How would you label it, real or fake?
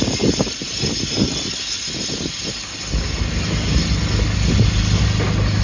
real